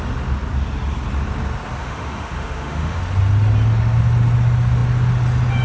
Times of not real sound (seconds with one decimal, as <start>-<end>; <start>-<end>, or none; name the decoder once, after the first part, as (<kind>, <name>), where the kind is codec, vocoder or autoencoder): 1.8-3.0 (autoencoder, DAC-VAE)